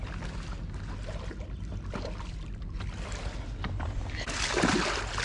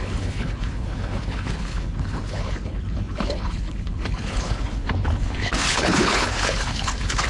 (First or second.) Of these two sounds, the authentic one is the first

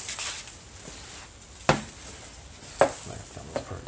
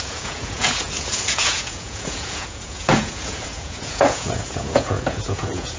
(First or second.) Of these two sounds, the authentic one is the first